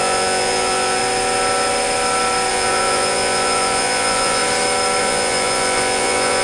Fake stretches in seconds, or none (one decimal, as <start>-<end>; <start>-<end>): 0.0-1.0; 2.5-4.4; 5.0-6.4